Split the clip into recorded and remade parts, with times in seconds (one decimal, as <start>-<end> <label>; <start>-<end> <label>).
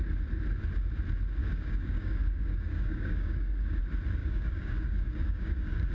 0.0-1.4 recorded; 1.4-3.8 remade; 3.8-4.2 recorded; 4.2-5.9 remade